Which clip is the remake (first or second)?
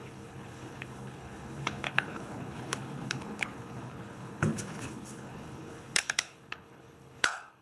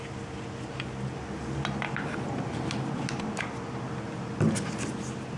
first